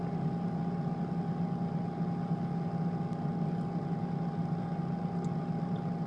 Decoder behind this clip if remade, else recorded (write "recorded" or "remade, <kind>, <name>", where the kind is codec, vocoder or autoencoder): recorded